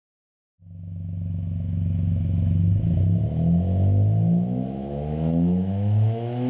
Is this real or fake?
fake